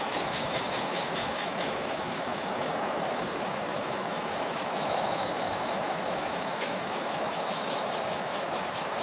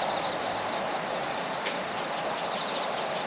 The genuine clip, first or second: second